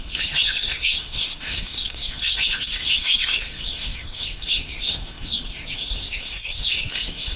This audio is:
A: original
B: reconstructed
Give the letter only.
B